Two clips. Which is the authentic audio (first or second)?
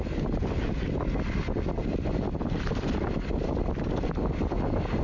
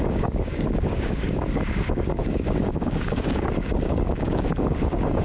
first